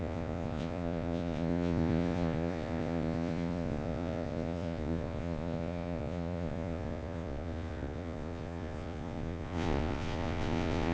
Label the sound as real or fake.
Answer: fake